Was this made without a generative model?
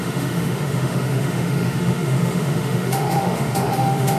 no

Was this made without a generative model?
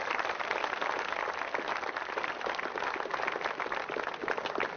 yes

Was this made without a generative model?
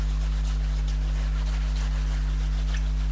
yes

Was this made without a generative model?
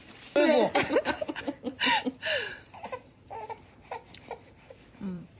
no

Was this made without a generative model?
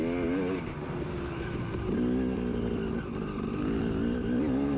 yes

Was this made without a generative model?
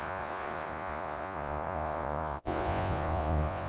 no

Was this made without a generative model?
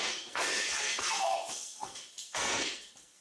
no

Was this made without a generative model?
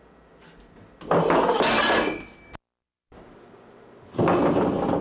yes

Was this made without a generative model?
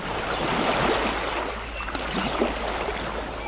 yes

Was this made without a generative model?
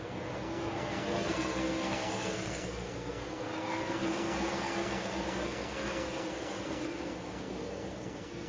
no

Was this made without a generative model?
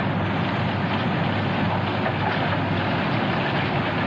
yes